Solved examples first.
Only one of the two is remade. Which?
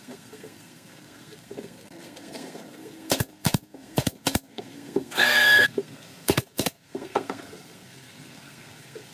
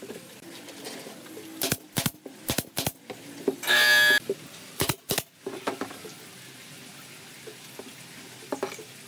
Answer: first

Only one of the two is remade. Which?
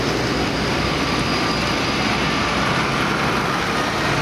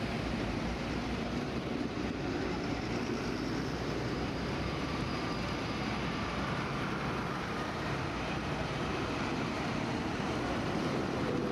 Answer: second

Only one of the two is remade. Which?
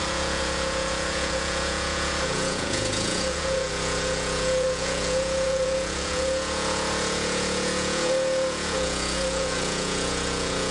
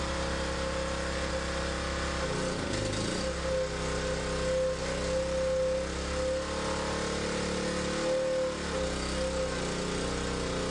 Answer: first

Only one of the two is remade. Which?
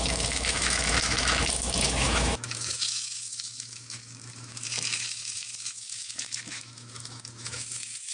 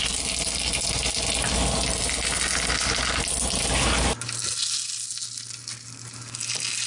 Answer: first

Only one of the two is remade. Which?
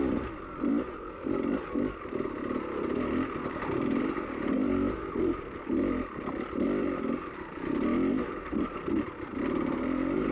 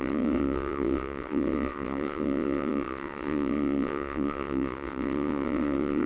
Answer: second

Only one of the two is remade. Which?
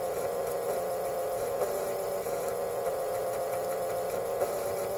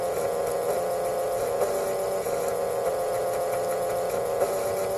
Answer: first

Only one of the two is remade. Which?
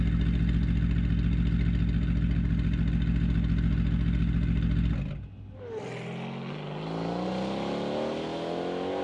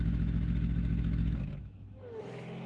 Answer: second